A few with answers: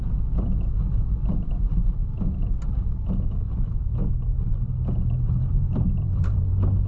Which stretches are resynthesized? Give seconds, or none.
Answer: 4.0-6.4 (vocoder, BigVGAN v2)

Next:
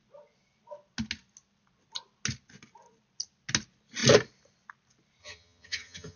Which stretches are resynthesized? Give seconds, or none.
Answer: 5.2-6.2 (vocoder, HiFi-GAN)

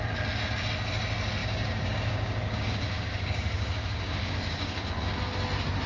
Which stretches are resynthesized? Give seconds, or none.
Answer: 1.4-4.9 (codec, DAC)